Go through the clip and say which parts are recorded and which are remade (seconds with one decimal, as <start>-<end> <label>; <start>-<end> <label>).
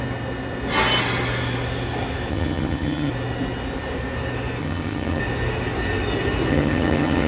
0.0-2.3 recorded; 2.3-3.1 remade; 3.1-4.6 recorded; 4.6-5.2 remade; 5.2-6.5 recorded; 6.5-7.3 remade